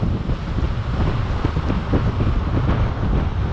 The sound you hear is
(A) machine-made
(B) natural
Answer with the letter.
B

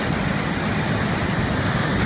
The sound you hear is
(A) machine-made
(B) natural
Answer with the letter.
B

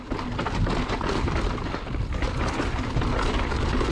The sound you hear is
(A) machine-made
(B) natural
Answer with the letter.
B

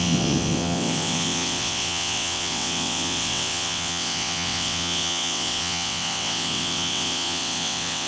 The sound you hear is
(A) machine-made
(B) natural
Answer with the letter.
A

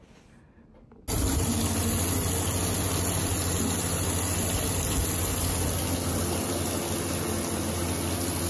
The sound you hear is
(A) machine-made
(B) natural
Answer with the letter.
B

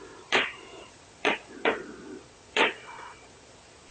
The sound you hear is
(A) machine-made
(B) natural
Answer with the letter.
A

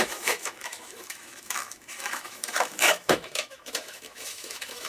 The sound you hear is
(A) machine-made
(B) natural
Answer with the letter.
A